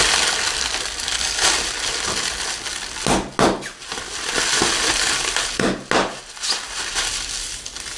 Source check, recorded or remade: recorded